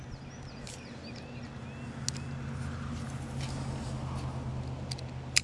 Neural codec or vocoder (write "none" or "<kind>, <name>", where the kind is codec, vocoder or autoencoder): none